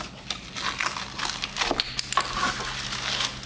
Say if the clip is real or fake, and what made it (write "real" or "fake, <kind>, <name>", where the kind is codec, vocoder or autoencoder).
real